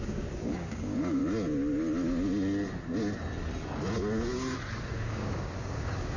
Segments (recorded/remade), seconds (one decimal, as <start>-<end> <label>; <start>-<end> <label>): 0.0-1.2 remade; 1.2-4.9 recorded; 4.9-6.2 remade